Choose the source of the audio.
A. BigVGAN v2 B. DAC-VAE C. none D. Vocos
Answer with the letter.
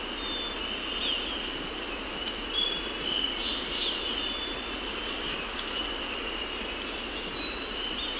C